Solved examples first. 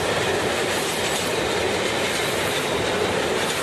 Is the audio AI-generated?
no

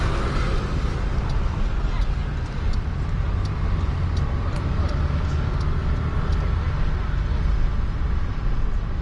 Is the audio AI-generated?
no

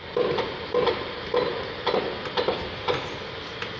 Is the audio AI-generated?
no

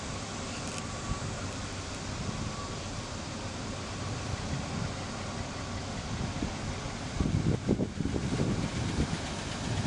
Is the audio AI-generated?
yes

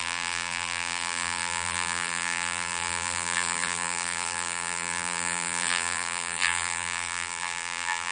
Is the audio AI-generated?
yes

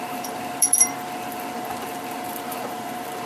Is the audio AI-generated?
yes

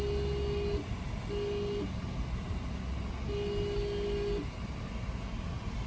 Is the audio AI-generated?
no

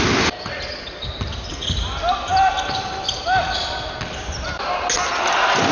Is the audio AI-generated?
no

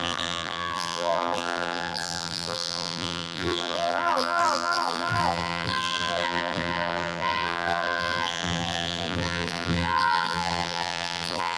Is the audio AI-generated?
yes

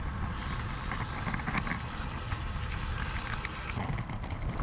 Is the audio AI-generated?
no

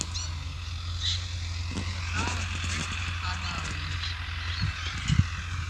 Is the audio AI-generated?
no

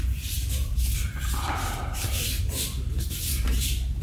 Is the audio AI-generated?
yes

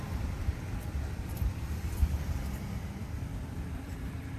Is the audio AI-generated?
yes